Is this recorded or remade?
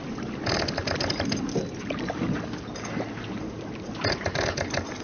recorded